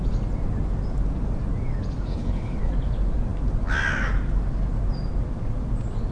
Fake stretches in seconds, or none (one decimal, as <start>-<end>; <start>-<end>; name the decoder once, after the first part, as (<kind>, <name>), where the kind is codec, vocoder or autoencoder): 2.1-2.7 (codec, HILCodec)